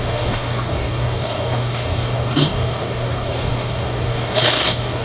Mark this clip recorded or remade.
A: remade